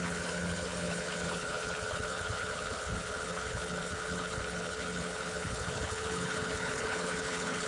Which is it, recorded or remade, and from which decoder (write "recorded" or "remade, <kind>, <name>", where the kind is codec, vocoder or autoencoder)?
remade, codec, HILCodec